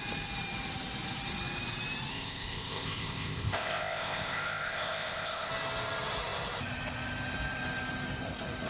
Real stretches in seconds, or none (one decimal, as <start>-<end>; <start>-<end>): 0.0-2.1; 5.5-8.7